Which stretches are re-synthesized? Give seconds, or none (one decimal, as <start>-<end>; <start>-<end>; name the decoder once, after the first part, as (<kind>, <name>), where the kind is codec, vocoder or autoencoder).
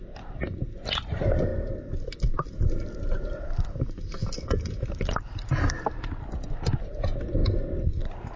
none